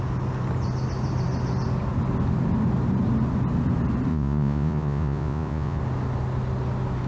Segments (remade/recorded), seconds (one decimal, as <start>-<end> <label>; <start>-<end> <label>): 0.0-4.1 recorded; 4.1-5.8 remade; 5.8-7.1 recorded